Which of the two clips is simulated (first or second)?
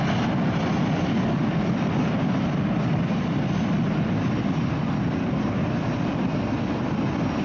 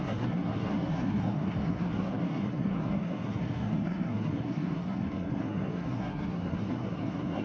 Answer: second